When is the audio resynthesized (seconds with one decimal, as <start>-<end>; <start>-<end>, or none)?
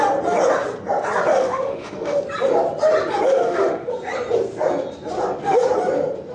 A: 1.3-2.2; 3.3-3.9